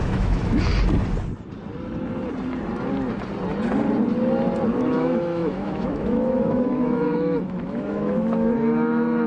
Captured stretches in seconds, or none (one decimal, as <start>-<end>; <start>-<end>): 0.7-4.8